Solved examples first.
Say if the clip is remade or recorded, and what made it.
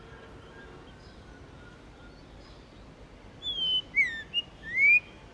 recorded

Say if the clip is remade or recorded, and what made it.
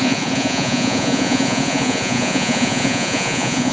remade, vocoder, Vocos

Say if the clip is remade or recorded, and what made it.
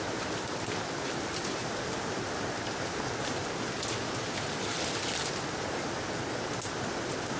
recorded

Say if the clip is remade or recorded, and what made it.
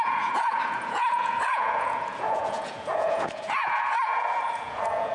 remade, vocoder, Vocos